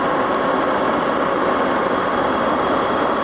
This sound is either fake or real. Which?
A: real